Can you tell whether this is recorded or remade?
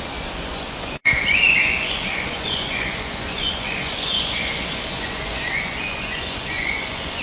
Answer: remade